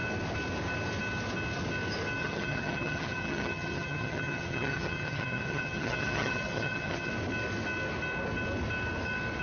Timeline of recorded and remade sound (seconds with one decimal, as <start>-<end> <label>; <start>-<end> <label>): 0.0-2.2 recorded; 2.2-7.1 remade; 7.1-9.4 recorded